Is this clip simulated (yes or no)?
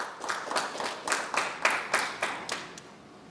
no